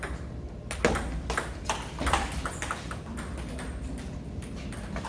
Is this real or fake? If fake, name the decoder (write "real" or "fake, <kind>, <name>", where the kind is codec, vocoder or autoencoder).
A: real